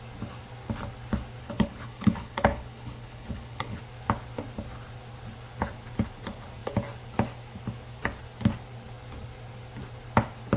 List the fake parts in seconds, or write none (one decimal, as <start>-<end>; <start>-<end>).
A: 1.4-3.8